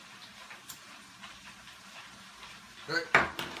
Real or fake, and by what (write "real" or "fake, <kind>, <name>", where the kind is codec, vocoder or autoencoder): real